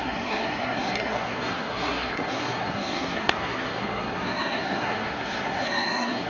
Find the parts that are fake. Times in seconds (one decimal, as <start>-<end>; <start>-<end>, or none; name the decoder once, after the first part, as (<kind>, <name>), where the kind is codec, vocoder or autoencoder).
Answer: 0.0-6.3 (codec, SNAC)